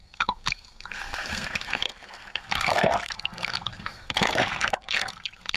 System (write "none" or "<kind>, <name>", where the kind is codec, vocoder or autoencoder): codec, SNAC